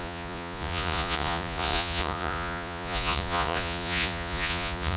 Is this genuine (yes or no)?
no